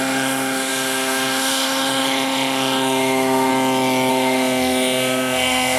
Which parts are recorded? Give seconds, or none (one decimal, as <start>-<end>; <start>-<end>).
3.5-4.1